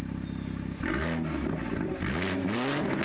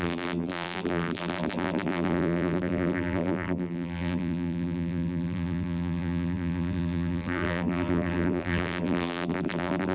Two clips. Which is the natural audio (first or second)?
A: first